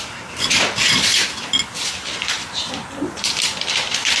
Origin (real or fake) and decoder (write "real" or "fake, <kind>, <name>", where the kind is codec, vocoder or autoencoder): fake, vocoder, BigVGAN v2